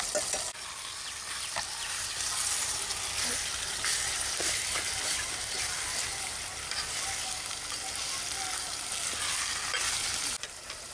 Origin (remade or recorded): recorded